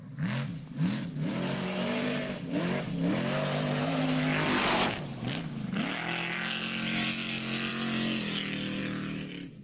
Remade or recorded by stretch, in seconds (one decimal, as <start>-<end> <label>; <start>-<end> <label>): 0.0-0.5 recorded; 0.5-2.6 remade; 2.6-9.6 recorded